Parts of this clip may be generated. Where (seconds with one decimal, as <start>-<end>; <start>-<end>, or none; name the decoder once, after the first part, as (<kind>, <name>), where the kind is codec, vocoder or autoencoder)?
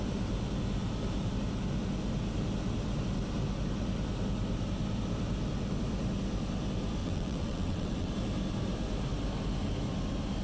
7.0-8.1 (vocoder, WaveNeXt)